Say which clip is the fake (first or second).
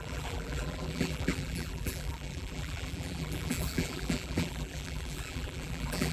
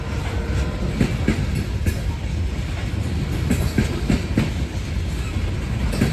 first